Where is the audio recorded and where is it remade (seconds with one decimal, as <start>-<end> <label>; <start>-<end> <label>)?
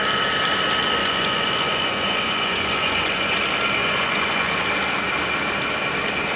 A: 0.0-1.0 recorded; 1.0-3.4 remade; 3.4-3.8 recorded; 3.8-4.5 remade; 4.5-6.4 recorded